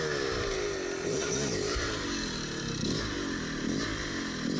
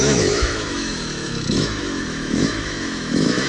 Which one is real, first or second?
first